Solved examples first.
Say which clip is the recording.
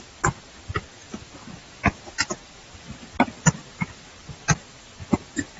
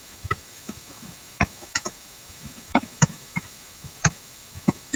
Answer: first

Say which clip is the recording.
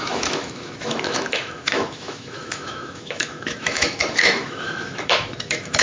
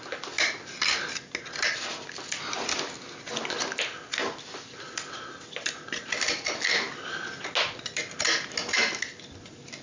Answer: second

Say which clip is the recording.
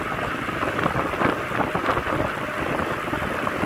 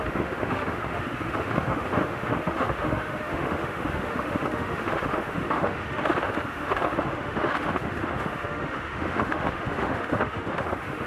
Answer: first